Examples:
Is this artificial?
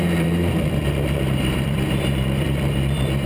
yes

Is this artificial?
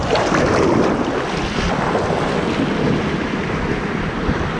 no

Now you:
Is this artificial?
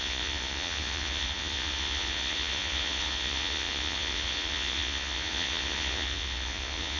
yes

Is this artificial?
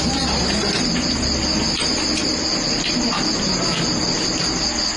no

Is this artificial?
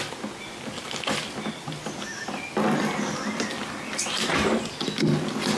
no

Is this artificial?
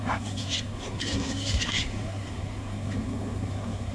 yes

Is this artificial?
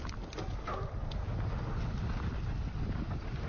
no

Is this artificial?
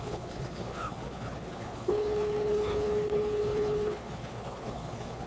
yes